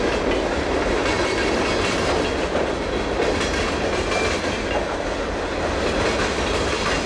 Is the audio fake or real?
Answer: real